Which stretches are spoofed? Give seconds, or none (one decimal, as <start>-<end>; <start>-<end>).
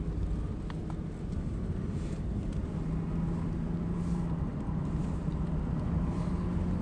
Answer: 0.8-2.5; 4.5-5.3